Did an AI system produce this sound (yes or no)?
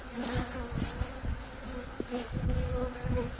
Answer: no